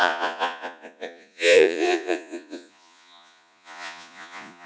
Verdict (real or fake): fake